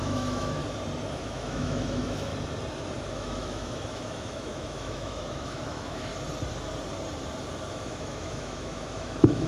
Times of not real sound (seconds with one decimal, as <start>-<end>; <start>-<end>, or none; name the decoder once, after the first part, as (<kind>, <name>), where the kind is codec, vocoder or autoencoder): 0.0-0.6 (autoencoder, DAC-VAE); 1.1-2.3; 3.1-6.1; 7.7-9.5